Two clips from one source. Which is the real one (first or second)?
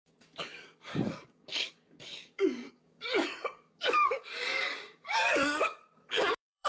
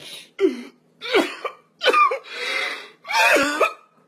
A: second